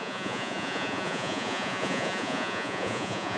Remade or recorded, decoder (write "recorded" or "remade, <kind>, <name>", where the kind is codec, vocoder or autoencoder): remade, vocoder, Vocos